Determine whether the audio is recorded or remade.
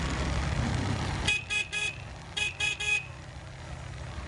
recorded